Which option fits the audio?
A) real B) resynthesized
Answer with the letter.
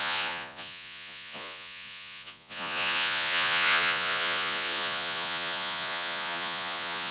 B